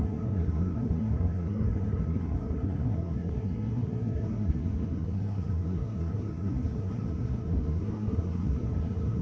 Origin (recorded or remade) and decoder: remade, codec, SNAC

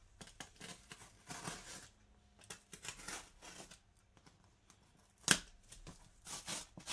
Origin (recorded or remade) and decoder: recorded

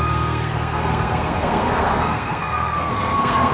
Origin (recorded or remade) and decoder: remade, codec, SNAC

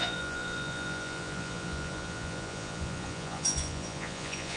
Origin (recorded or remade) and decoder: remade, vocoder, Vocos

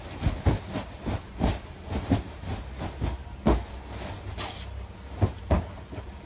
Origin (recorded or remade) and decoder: recorded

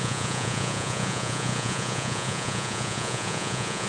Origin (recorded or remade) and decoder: remade, vocoder, Vocos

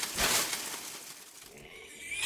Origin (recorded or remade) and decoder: recorded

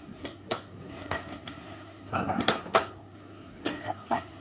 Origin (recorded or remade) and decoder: remade, codec, SNAC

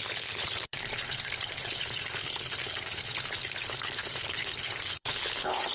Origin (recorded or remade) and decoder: remade, codec, HILCodec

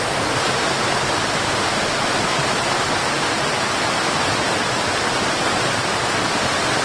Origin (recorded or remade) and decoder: recorded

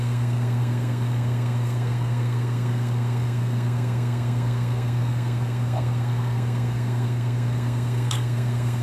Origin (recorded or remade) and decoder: remade, codec, SNAC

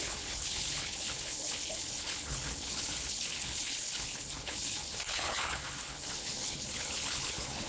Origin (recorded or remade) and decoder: remade, codec, HILCodec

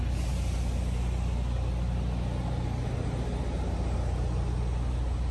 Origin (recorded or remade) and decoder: recorded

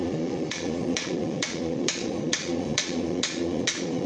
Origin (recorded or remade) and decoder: remade, vocoder, Vocos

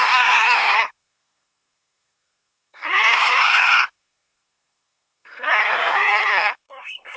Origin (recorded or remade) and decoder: remade, codec, SNAC